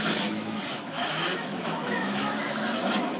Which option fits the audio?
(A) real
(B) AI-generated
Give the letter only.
B